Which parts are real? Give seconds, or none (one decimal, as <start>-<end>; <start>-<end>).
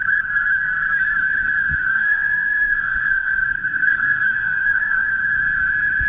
0.0-1.6; 5.3-6.1